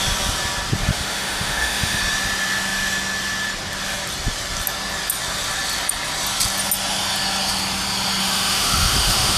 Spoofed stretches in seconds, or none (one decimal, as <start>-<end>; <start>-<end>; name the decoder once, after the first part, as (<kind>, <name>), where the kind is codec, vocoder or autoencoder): 0.9-2.0 (autoencoder, DAC-VAE); 8.2-9.4